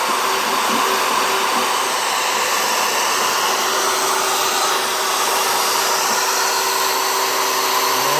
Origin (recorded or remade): recorded